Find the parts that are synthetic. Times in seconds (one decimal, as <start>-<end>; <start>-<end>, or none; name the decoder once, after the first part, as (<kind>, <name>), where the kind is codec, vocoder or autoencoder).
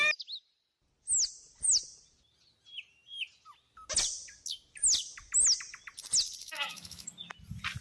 6.4-7.1 (autoencoder, DAC-VAE)